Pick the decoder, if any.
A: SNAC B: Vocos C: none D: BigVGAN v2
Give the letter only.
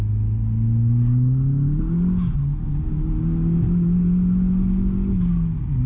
C